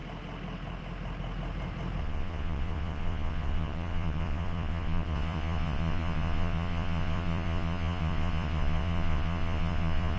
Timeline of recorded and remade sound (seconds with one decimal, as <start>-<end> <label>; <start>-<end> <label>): 0.0-2.0 recorded; 2.0-10.2 remade

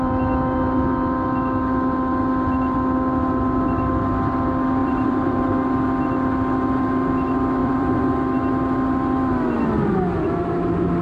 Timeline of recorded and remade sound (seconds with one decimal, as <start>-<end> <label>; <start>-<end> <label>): 0.0-4.8 recorded; 4.8-5.4 remade; 5.4-7.6 recorded; 7.6-8.1 remade; 8.1-11.0 recorded

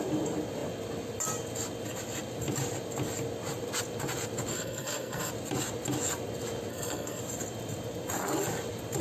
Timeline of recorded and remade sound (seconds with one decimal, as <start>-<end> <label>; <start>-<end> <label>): 0.0-4.5 recorded; 4.5-5.3 remade; 5.3-6.7 recorded; 6.7-7.2 remade; 7.2-9.0 recorded

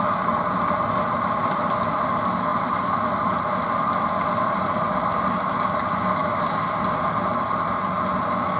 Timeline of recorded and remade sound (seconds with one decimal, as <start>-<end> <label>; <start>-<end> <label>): 0.0-8.6 recorded